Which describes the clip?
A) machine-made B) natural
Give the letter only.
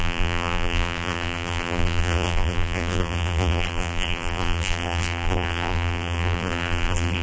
A